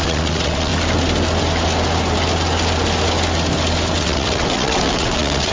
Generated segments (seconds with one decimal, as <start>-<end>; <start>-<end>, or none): 0.0-0.7; 4.0-5.5